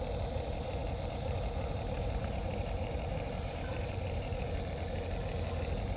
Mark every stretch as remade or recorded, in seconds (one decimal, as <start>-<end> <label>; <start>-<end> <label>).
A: 0.0-0.8 recorded; 0.8-4.4 remade; 4.4-6.0 recorded